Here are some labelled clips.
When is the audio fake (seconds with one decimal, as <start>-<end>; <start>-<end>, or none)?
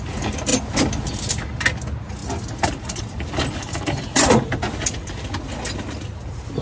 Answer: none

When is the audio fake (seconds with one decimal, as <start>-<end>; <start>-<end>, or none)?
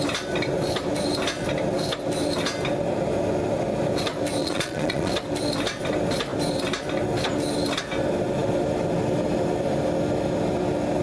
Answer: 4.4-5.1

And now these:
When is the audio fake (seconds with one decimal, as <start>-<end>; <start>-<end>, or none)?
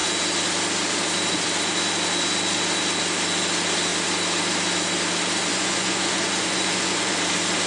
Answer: 5.5-7.1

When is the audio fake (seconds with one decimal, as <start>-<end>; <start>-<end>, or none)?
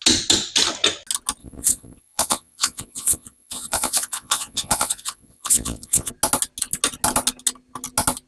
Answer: 1.4-6.1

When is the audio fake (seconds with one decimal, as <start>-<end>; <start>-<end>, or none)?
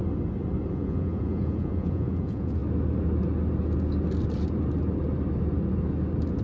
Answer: 0.7-2.6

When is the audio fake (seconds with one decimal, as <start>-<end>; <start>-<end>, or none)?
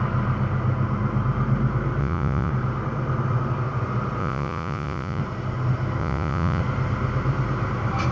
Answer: 2.0-2.5; 4.2-5.2; 6.0-6.6